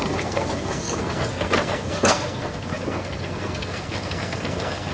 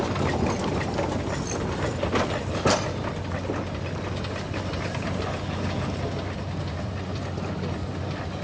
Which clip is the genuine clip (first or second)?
second